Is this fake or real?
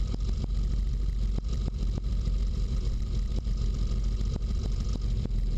fake